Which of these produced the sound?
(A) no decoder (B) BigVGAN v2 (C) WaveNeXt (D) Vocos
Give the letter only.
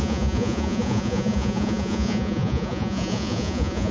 D